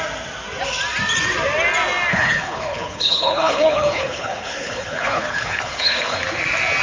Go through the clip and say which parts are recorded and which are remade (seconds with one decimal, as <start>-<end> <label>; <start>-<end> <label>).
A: 0.0-2.1 recorded; 2.1-6.2 remade; 6.2-6.8 recorded